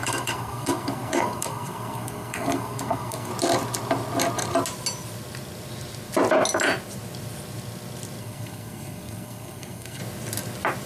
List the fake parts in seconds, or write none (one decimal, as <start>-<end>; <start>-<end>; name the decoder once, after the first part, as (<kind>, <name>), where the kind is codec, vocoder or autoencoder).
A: 0.0-3.3 (codec, SNAC); 8.2-10.0